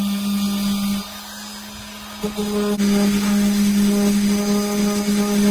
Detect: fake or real real